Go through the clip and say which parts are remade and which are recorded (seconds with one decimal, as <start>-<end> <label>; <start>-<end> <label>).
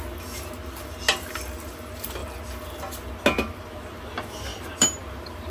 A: 0.0-4.5 recorded; 4.5-5.5 remade